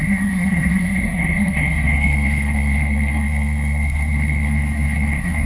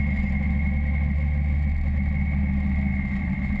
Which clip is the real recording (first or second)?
second